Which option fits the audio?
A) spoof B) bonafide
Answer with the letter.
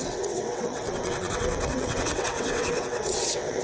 A